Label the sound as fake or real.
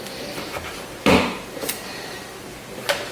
real